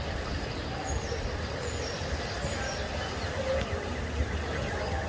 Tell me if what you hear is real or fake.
real